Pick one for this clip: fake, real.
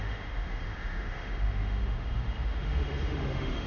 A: fake